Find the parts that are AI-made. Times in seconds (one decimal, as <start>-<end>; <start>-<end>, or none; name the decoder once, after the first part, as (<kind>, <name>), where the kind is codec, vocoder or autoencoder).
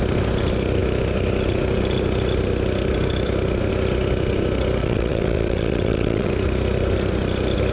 4.8-6.3 (vocoder, WaveNeXt)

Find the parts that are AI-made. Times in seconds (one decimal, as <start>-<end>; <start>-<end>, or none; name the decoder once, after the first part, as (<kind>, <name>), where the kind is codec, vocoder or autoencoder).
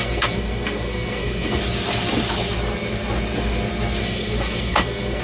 0.0-1.6 (codec, SNAC); 4.0-5.2